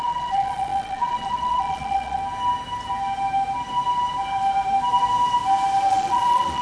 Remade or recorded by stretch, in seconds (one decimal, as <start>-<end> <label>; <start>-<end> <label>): 0.0-2.2 remade; 2.2-5.9 recorded; 5.9-6.6 remade